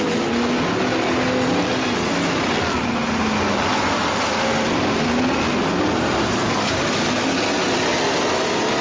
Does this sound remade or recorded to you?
recorded